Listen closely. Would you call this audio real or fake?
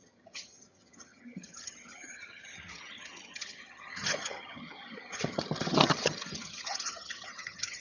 fake